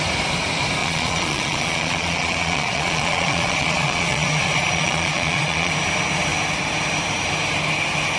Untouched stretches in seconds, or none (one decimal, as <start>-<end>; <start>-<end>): 0.0-0.8; 5.7-8.2